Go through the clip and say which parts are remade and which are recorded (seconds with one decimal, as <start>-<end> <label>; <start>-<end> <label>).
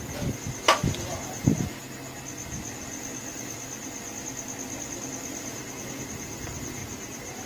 0.0-6.8 recorded; 6.8-7.5 remade